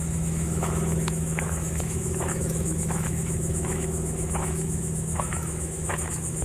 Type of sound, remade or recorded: remade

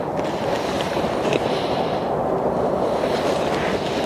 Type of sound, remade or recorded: recorded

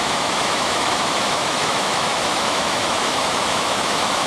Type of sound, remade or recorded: remade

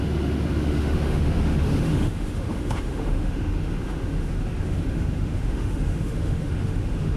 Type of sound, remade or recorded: remade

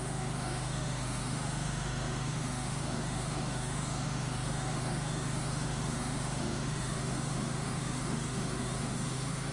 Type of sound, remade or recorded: remade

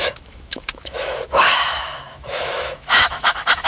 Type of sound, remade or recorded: remade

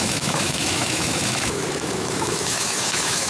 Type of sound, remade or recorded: remade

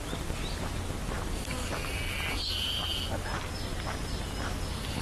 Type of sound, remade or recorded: recorded